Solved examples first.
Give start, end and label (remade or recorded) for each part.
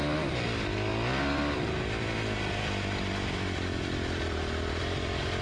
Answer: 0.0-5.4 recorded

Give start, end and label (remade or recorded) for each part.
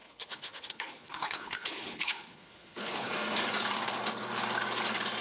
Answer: 0.0-3.1 remade; 3.1-5.2 recorded